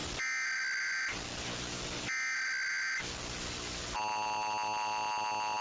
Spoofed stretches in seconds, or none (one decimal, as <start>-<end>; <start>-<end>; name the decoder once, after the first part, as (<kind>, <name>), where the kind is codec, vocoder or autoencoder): none